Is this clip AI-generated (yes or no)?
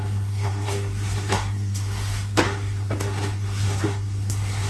yes